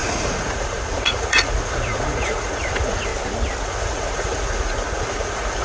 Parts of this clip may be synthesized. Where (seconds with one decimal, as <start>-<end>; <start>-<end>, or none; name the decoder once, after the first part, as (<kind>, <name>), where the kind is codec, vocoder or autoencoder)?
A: 0.0-3.1 (vocoder, Vocos); 3.6-5.6